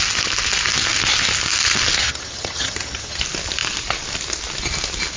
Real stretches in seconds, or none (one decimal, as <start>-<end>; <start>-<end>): 0.0-2.0; 3.2-5.2